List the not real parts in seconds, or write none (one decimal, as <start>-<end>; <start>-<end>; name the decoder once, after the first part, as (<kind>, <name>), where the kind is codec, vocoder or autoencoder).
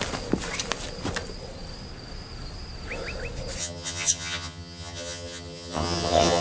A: 3.6-6.4 (vocoder, HiFi-GAN)